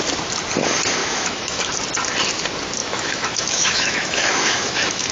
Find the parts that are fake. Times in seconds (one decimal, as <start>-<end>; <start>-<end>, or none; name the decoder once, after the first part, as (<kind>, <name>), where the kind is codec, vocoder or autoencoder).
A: 1.0-1.7 (autoencoder, DAC-VAE); 2.8-5.1